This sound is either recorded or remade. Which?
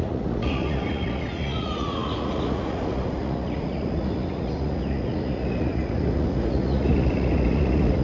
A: remade